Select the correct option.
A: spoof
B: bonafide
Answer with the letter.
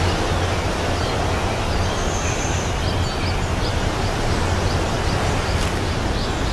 B